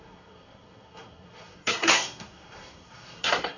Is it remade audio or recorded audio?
remade